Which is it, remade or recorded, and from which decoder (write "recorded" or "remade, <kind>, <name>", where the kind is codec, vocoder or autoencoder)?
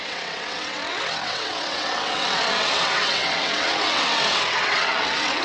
remade, vocoder, WaveNeXt